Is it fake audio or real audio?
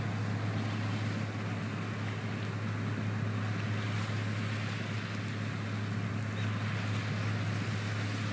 real